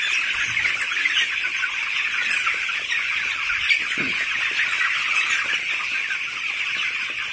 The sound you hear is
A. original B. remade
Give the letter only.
A